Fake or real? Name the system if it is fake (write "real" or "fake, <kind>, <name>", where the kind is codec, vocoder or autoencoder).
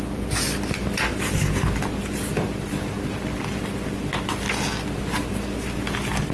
real